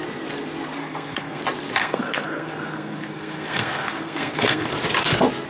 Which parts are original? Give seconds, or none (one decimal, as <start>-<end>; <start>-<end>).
0.0-0.8; 1.4-1.8; 4.7-5.5